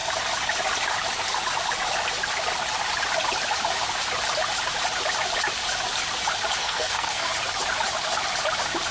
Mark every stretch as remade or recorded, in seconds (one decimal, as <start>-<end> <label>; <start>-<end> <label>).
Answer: 0.0-6.6 recorded; 6.6-7.3 remade; 7.3-8.9 recorded